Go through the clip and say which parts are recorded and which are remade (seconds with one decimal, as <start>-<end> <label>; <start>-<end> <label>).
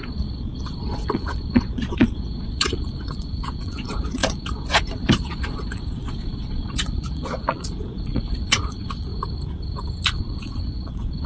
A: 0.0-9.1 remade; 9.1-10.2 recorded; 10.2-11.3 remade